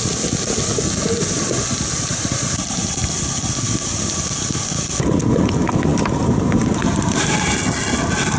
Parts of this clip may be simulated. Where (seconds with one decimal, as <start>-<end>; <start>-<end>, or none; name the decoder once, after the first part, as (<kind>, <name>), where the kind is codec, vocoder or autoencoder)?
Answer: 2.1-2.8 (vocoder, BigVGAN v2); 5.9-7.6